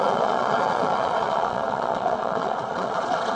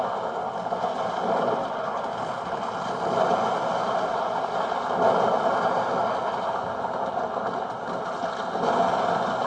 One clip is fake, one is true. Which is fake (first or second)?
first